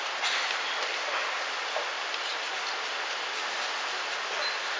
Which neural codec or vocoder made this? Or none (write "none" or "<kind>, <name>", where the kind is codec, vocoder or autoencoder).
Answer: none